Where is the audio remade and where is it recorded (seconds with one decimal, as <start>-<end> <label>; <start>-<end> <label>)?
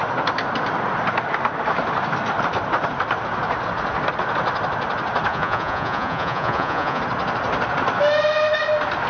0.0-5.3 recorded; 5.3-7.0 remade; 7.0-9.1 recorded